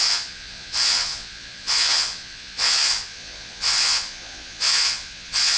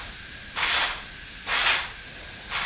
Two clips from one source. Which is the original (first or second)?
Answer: second